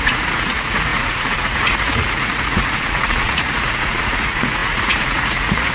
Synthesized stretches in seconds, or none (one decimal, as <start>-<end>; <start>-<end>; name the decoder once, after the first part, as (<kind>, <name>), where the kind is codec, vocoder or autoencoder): 0.0-5.7 (vocoder, Vocos)